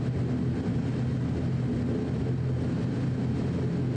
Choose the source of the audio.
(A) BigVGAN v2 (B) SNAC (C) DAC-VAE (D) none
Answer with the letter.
D